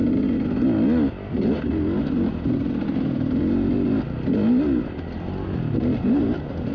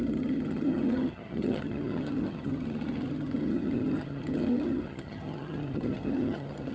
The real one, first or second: first